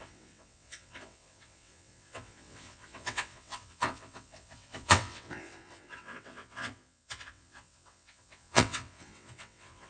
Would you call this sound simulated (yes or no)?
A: yes